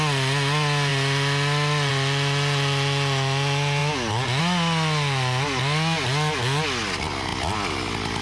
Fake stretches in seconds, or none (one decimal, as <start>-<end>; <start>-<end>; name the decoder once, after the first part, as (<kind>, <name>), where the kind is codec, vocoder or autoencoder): none